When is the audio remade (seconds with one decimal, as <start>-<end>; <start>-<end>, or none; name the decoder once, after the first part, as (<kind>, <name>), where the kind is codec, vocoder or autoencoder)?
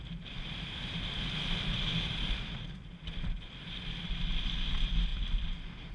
0.0-5.9 (vocoder, BigVGAN v2)